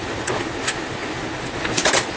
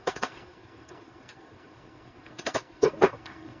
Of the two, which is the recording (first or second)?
first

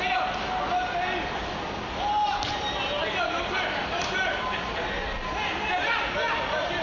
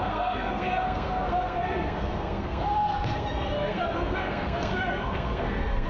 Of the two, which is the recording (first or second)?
first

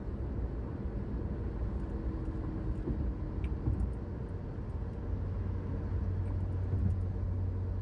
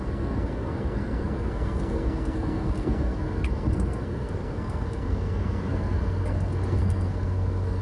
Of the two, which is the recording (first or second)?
first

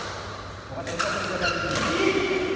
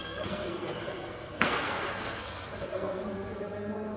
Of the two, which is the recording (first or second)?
first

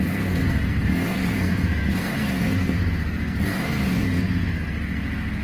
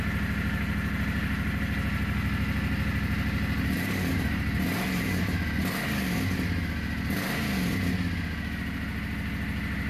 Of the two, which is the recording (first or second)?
second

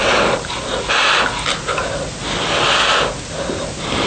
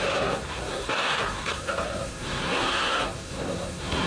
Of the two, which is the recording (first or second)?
first